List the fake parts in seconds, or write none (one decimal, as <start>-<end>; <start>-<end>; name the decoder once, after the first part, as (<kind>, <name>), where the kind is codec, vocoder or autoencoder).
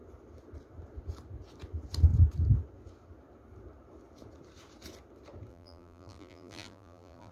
5.5-7.3 (vocoder, BigVGAN v2)